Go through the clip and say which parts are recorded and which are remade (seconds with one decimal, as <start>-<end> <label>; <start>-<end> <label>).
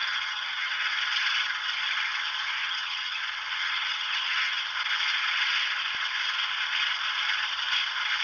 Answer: 0.0-0.9 remade; 0.9-2.6 recorded; 2.6-3.2 remade; 3.2-3.6 recorded; 3.6-4.6 remade; 4.6-8.2 recorded